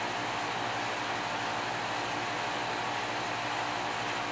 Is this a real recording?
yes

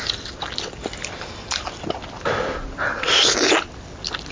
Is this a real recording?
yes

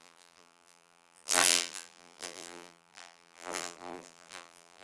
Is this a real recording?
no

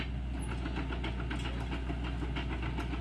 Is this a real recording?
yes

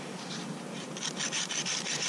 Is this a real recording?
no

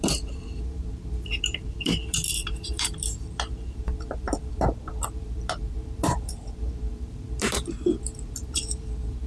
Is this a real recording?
no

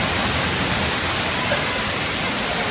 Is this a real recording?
yes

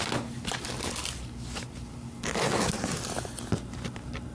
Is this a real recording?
yes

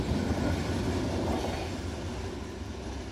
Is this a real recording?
yes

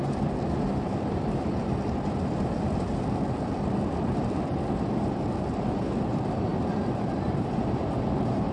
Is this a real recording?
no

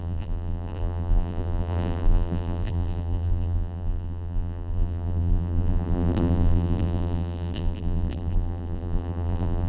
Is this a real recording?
no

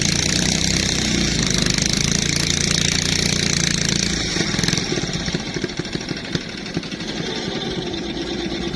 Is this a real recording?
yes